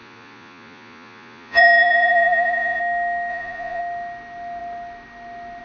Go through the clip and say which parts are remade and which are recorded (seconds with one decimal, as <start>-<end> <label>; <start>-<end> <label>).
0.0-2.8 remade; 2.8-3.3 recorded; 3.3-3.8 remade; 3.8-5.6 recorded